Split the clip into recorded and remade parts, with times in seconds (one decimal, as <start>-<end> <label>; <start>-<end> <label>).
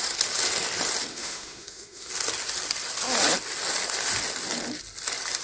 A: 0.0-1.1 recorded; 1.1-2.1 remade; 2.1-5.4 recorded